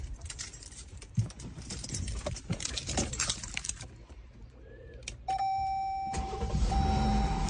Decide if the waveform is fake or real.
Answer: fake